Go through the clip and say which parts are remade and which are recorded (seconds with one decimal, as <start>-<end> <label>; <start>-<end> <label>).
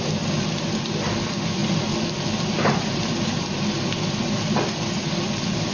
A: 0.0-5.7 recorded